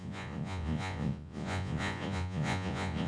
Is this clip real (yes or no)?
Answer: no